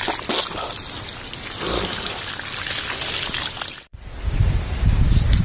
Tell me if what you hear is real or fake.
real